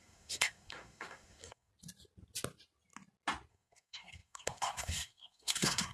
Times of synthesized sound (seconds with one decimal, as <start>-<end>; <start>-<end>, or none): 0.0-1.7; 3.5-5.9